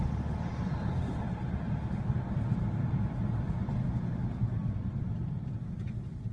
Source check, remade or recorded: recorded